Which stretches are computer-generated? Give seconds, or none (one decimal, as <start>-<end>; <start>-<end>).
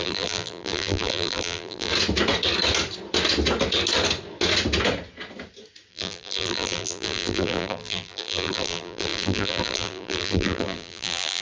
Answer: 0.0-1.9; 5.9-11.4